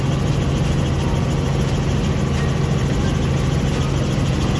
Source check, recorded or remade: recorded